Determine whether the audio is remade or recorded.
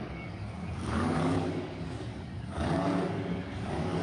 remade